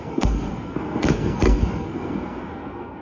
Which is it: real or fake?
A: fake